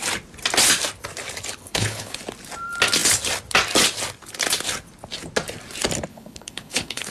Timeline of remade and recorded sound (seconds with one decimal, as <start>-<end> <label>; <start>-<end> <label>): 0.0-1.6 recorded; 1.6-2.2 remade; 2.2-6.1 recorded; 6.1-7.1 remade